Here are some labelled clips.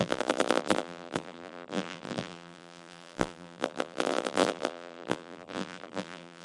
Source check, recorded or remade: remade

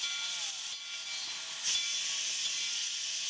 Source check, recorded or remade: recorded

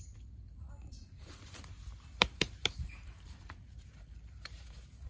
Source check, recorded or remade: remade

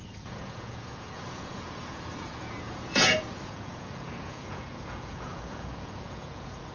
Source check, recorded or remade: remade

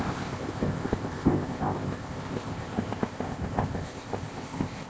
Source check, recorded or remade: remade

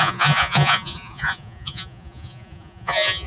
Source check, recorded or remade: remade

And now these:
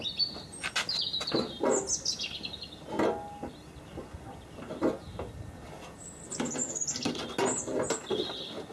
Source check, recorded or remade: recorded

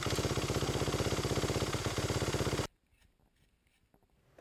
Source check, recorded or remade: recorded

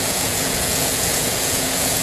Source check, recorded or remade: remade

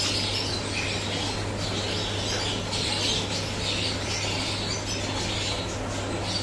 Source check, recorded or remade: recorded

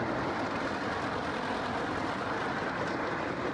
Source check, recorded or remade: recorded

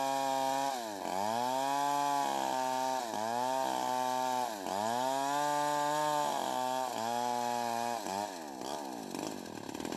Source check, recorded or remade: recorded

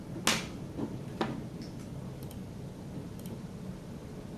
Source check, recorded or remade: recorded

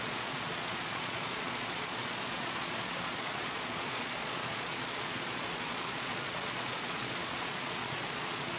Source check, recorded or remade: remade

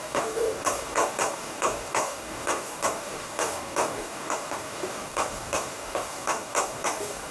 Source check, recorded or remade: remade